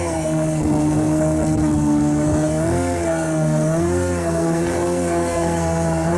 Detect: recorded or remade remade